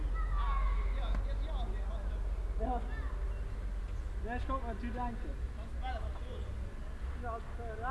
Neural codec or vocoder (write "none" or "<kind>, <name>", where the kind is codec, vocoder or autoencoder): none